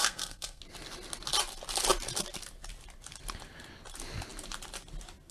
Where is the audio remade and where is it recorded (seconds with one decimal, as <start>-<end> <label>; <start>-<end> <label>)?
0.0-0.6 remade; 0.6-5.3 recorded